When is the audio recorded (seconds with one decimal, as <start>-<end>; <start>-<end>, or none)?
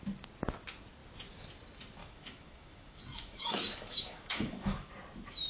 0.0-2.0; 4.9-5.5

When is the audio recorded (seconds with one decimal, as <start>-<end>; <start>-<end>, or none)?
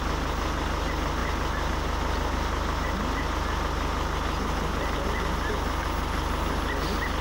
0.0-7.2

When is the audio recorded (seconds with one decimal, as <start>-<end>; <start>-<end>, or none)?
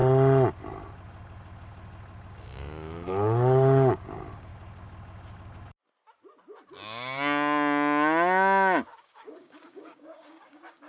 0.0-2.3; 4.5-9.0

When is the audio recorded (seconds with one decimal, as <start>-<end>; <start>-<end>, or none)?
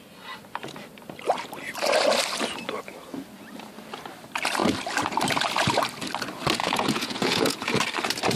0.0-6.6; 7.8-8.4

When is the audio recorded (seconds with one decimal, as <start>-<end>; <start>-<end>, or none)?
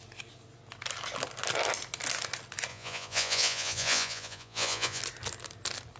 0.0-2.7; 5.0-6.0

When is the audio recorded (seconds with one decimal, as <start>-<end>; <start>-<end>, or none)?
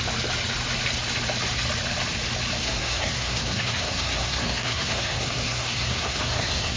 0.0-2.6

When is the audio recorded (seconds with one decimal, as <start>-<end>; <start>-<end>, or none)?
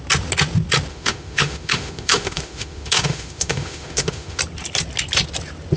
0.0-0.9; 4.4-5.8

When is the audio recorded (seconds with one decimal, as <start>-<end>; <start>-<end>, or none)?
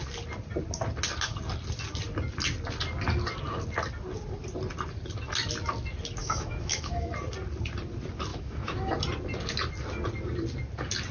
0.0-6.2; 7.1-8.3; 8.9-11.1